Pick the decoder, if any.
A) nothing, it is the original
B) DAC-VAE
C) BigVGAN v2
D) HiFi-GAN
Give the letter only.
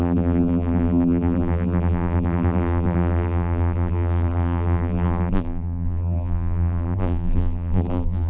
C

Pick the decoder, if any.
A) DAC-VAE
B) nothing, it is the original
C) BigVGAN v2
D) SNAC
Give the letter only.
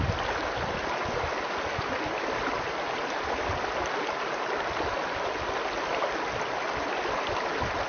B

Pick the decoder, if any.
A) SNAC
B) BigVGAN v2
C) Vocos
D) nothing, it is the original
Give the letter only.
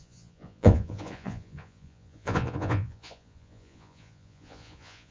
C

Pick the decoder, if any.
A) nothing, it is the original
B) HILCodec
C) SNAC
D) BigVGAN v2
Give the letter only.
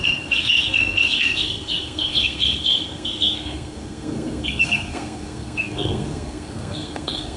C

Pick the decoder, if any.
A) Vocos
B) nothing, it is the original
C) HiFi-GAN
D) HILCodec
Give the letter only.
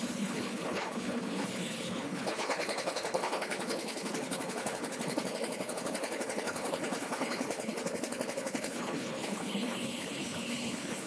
D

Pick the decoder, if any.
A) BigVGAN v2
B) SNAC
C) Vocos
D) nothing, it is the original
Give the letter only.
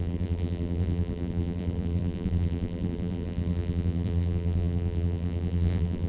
A